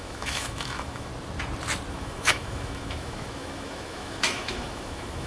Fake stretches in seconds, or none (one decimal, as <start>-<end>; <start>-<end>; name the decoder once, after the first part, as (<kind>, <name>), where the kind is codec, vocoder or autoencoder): 0.0-1.1 (autoencoder, DAC-VAE); 1.9-5.3